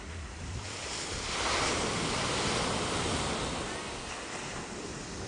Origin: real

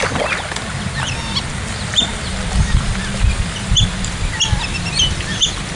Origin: real